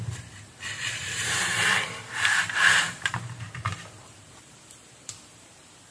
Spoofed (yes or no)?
yes